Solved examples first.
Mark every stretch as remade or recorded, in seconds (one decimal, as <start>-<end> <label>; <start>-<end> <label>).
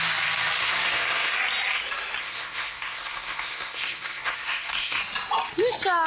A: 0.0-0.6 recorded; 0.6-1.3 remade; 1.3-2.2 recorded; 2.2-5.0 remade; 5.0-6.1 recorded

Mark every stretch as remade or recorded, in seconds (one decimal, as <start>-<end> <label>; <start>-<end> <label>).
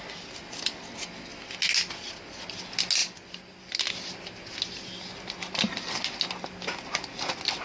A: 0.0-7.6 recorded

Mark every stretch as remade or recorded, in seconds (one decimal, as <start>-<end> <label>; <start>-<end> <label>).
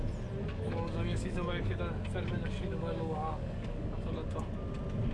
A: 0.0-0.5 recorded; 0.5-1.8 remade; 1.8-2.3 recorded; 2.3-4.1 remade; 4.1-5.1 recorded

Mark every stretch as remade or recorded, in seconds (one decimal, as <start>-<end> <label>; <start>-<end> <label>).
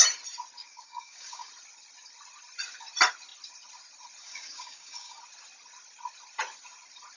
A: 0.0-0.6 recorded; 0.6-1.5 remade; 1.5-4.2 recorded; 4.2-5.2 remade; 5.2-7.2 recorded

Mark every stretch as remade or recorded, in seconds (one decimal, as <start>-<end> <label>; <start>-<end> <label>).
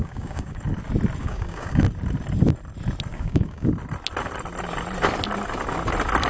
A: 0.0-0.6 remade; 0.6-1.2 recorded; 1.2-1.8 remade; 1.8-3.1 recorded; 3.1-3.7 remade; 3.7-6.3 recorded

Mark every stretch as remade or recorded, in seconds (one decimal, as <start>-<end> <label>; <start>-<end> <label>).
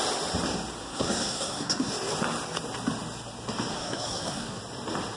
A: 0.0-0.8 recorded; 0.8-1.9 remade; 1.9-3.7 recorded; 3.7-4.6 remade; 4.6-5.2 recorded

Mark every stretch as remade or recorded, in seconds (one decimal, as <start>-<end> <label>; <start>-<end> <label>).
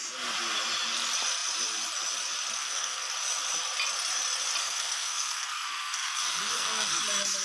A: 0.0-2.6 recorded; 2.6-3.1 remade; 3.1-4.6 recorded; 4.6-7.0 remade; 7.0-7.4 recorded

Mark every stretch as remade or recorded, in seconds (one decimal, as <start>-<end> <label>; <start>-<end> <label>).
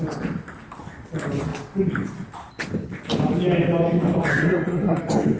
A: 0.0-4.3 recorded; 4.3-5.0 remade; 5.0-5.4 recorded